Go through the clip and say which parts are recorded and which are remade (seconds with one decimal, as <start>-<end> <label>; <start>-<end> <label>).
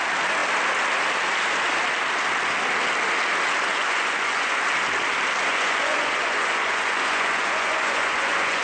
0.0-3.7 recorded; 3.7-4.6 remade; 4.6-5.5 recorded; 5.5-8.6 remade